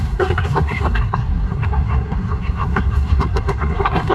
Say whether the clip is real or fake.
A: fake